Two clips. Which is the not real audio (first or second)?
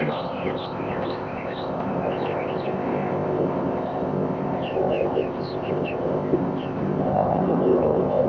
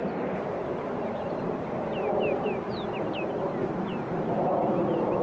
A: first